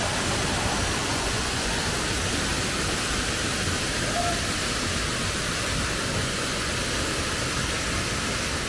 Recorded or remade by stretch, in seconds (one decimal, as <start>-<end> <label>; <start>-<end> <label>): 0.0-1.0 recorded; 1.0-1.8 remade; 1.8-6.2 recorded; 6.2-6.7 remade; 6.7-8.7 recorded